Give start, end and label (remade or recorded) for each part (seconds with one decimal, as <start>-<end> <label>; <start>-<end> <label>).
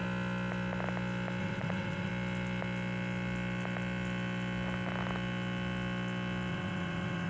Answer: 0.0-1.4 recorded; 1.4-2.1 remade; 2.1-6.5 recorded; 6.5-7.3 remade